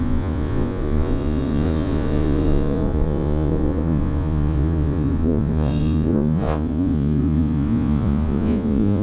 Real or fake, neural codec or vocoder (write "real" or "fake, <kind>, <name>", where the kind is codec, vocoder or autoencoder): fake, vocoder, Vocos